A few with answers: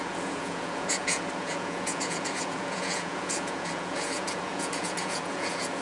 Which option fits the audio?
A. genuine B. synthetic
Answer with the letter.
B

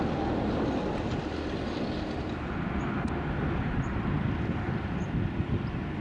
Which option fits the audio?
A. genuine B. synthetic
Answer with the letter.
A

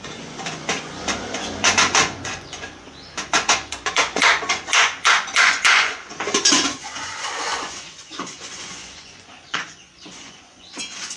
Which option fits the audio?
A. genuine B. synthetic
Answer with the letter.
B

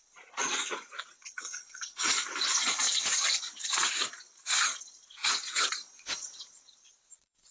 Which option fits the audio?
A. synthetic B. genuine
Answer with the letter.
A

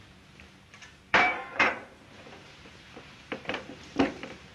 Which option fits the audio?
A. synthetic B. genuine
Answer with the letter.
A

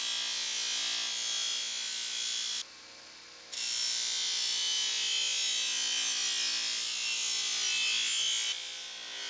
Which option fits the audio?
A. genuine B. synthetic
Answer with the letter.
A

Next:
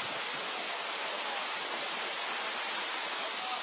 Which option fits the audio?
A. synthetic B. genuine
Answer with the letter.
B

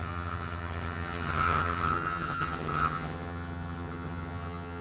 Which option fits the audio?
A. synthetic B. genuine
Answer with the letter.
A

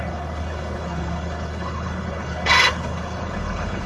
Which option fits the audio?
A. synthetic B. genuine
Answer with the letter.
A